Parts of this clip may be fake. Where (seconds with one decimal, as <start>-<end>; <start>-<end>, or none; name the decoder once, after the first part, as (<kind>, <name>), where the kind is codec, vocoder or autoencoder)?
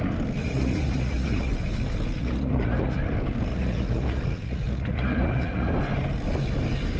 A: 0.4-1.5 (vocoder, Vocos); 2.2-3.0; 3.5-5.7